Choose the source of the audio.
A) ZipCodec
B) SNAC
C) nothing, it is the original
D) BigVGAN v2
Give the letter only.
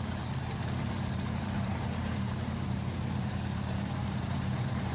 D